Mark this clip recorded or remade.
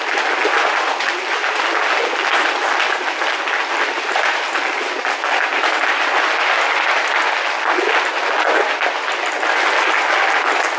recorded